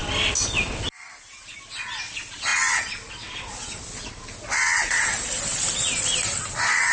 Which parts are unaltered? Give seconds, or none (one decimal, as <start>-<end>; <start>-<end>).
0.0-6.9